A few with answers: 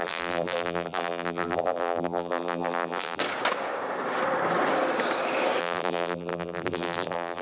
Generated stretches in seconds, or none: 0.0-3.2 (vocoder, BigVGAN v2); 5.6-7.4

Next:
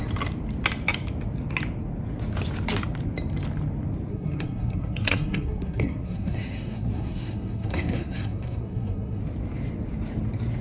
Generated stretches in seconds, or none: 4.1-9.2 (codec, SNAC)

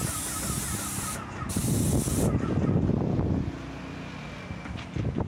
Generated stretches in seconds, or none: none

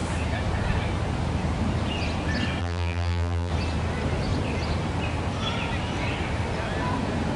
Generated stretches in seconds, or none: 2.6-3.5 (vocoder, BigVGAN v2)

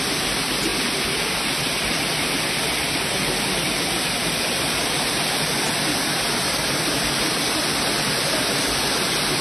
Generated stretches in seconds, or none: none